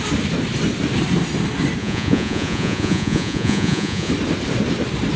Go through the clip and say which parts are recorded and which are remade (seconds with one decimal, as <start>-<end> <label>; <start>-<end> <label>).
0.0-1.8 recorded; 1.8-4.1 remade; 4.1-5.2 recorded